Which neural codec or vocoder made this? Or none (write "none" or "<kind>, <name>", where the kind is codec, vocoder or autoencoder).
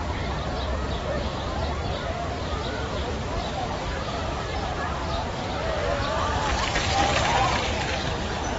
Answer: vocoder, BigVGAN v2